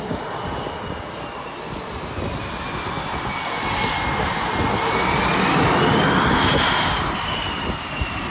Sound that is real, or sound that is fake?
real